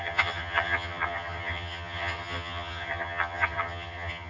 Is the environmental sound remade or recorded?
remade